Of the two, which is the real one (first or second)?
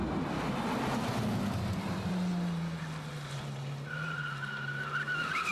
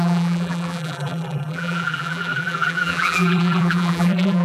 first